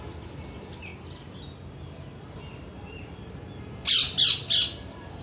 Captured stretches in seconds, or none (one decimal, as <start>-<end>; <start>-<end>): 0.0-5.2